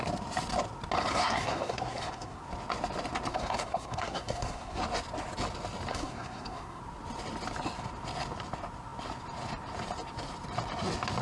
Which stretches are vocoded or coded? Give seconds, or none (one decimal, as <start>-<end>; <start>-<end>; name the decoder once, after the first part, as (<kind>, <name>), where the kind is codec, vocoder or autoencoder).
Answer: 1.1-2.4 (codec, SNAC); 3.3-4.8; 5.9-6.8